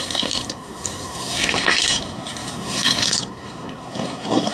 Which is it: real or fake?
fake